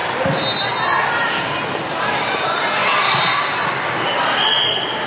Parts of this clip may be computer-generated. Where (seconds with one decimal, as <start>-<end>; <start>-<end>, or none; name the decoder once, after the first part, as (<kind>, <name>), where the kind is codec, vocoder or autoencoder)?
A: 0.0-0.7 (vocoder, BigVGAN v2); 1.2-1.8